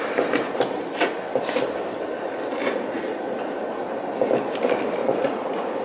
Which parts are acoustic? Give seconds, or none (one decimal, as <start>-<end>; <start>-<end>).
0.0-2.6; 3.2-5.0